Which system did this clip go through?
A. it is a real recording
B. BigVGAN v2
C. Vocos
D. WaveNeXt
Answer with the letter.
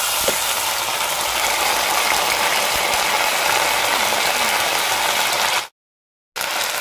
A